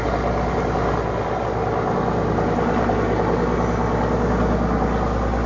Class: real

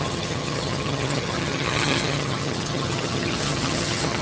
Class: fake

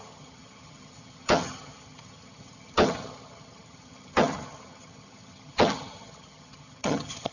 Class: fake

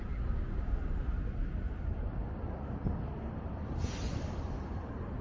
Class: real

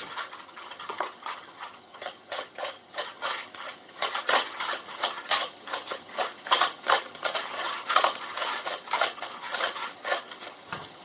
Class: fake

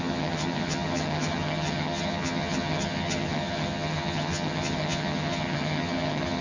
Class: fake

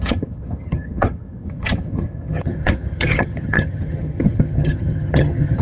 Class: fake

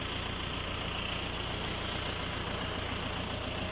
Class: real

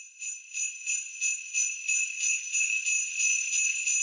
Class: real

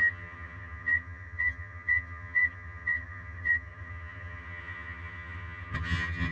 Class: fake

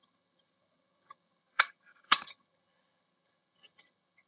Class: fake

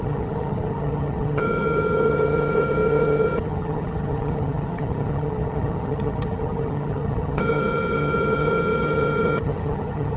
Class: fake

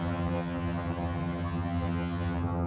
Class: fake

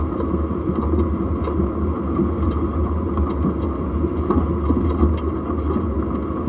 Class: real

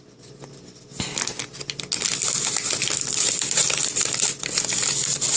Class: real